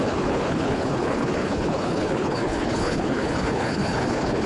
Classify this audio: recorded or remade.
remade